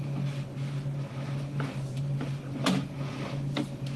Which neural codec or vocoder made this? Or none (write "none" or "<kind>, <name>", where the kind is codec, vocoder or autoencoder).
none